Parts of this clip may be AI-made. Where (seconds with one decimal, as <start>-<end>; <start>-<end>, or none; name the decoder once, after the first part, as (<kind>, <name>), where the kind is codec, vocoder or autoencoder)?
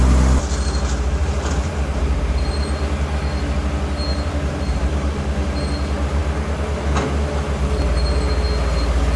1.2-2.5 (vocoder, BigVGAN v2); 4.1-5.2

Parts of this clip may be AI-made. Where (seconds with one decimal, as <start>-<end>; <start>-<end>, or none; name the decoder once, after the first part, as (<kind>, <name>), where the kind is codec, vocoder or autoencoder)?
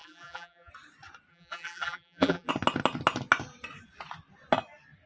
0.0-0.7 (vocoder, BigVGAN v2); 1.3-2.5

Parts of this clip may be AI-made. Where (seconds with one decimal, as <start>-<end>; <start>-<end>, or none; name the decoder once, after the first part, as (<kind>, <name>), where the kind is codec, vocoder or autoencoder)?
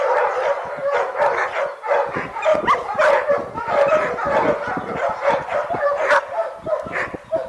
0.8-1.7 (vocoder, BigVGAN v2); 2.5-3.3